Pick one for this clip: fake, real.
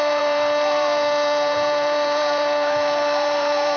fake